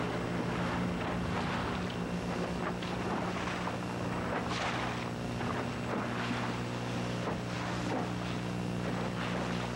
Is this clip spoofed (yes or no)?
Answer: no